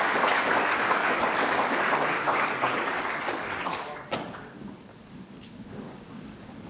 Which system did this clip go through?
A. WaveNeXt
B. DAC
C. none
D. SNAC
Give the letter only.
B